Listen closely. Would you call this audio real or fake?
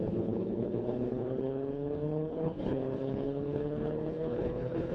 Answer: fake